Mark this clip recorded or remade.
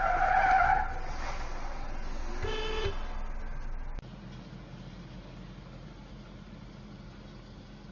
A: recorded